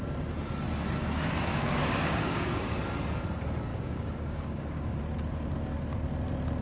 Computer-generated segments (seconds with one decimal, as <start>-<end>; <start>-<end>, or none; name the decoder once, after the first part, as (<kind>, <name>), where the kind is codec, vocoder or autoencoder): 1.5-2.8 (codec, DAC); 3.7-5.0